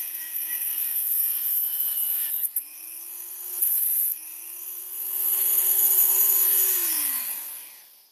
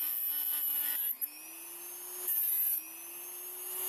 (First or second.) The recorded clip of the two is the second